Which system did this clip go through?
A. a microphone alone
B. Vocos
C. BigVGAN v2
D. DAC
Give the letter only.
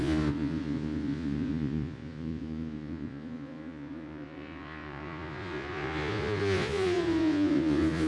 B